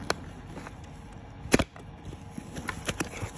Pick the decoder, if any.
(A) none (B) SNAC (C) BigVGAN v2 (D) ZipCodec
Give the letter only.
A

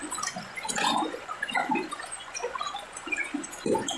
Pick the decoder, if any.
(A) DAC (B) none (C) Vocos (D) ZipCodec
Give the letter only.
C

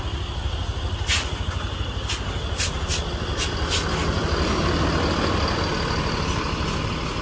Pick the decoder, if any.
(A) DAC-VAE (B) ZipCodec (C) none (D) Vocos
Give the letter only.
C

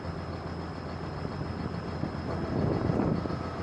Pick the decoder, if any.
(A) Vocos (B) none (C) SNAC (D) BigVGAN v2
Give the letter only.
B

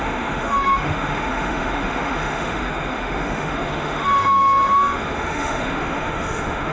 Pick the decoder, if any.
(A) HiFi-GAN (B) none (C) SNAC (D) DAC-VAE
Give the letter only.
D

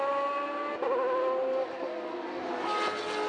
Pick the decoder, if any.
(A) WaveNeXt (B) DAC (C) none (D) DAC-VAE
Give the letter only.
C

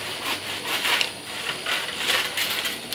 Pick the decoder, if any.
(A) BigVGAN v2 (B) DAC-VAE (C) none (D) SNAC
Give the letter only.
C